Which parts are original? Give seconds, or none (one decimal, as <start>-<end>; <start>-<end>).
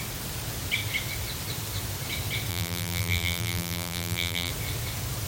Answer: 0.0-2.5; 4.5-5.3